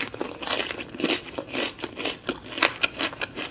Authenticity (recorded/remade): recorded